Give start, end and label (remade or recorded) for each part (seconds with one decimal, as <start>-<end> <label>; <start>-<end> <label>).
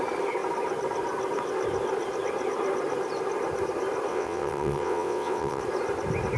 0.0-4.1 recorded; 4.1-5.6 remade; 5.6-6.4 recorded